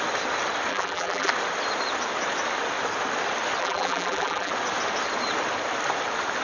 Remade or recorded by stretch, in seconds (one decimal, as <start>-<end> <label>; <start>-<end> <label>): 0.0-0.7 recorded; 0.7-1.3 remade; 1.3-3.6 recorded; 3.6-4.5 remade; 4.5-6.4 recorded